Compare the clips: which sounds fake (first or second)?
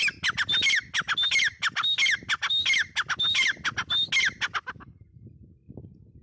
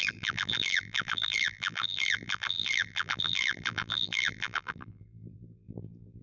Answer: second